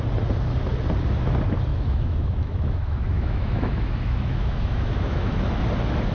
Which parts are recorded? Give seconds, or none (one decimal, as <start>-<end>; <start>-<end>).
0.0-1.7; 5.4-6.1